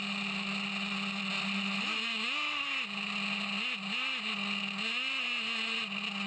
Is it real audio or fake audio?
real